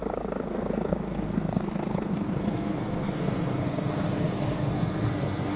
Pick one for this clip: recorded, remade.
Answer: remade